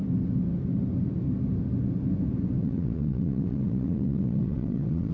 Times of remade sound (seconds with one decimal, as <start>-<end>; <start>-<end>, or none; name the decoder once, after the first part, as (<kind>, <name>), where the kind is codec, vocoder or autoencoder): 2.6-5.1 (vocoder, WaveNeXt)